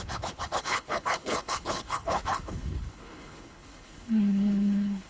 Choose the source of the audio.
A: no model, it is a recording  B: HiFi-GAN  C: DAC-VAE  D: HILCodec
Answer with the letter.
D